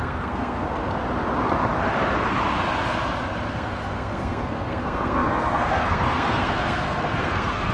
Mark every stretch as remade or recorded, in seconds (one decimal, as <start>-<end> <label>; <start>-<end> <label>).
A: 0.0-0.8 remade; 0.8-3.5 recorded; 3.5-7.7 remade